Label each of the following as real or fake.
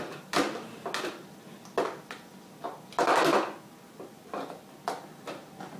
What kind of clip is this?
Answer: real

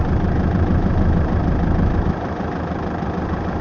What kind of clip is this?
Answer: fake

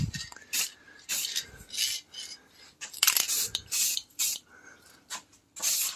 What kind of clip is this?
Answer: real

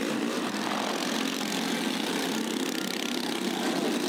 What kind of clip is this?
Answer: real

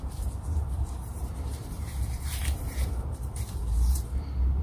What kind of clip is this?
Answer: fake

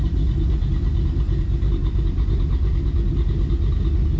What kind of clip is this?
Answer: real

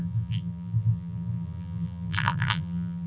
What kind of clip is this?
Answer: fake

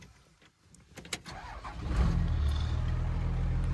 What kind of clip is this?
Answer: real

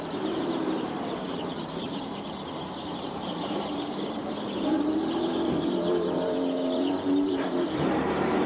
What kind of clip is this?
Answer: fake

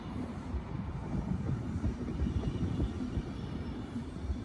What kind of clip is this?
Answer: fake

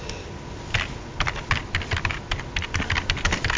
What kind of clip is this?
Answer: real